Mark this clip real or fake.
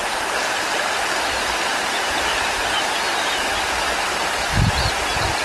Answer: real